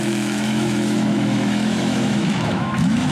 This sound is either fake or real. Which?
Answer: fake